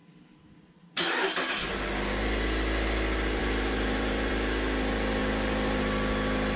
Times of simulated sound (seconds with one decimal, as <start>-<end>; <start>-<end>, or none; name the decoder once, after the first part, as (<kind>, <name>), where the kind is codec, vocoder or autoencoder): 0.0-1.5 (vocoder, BigVGAN v2); 3.4-4.3; 5.2-5.8